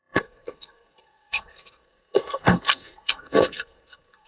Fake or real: fake